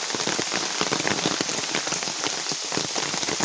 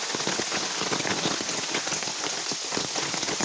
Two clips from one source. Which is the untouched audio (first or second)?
first